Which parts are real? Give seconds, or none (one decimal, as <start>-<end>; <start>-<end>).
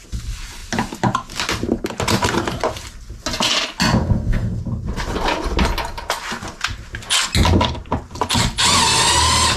0.0-4.0; 4.6-9.6